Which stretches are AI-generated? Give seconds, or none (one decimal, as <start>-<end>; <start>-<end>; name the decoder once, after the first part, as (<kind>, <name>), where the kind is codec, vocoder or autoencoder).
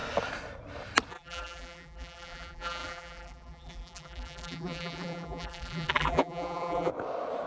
1.1-6.9 (vocoder, BigVGAN v2)